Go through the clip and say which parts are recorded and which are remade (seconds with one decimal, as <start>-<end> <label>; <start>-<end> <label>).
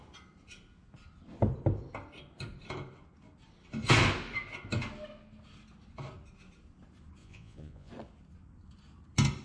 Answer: 0.0-7.2 recorded; 7.2-7.9 remade; 7.9-9.4 recorded